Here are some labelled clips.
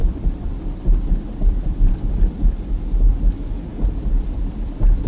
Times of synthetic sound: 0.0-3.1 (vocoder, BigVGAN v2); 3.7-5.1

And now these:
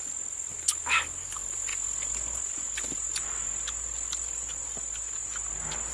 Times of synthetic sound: 3.9-4.4 (vocoder, BigVGAN v2)

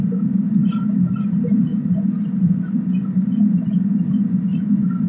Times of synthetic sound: 1.7-2.5 (vocoder, BigVGAN v2); 4.5-5.1